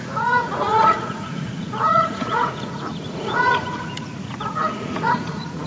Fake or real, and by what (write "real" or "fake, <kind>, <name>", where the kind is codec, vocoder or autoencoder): fake, vocoder, Vocos